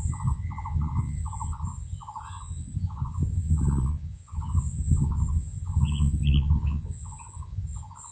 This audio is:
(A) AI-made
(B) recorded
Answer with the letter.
A